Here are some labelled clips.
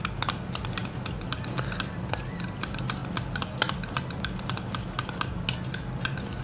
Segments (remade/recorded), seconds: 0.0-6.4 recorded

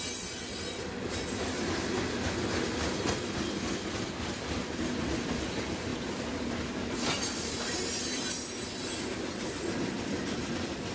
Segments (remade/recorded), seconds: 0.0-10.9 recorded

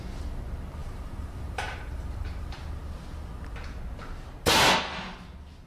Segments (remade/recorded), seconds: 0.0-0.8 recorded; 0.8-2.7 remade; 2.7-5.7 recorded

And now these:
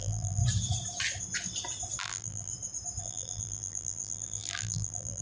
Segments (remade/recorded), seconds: 0.0-0.4 remade; 0.4-2.0 recorded; 2.0-2.5 remade; 2.5-3.0 recorded; 3.0-5.2 remade